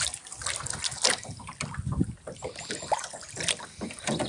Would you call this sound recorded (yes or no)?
yes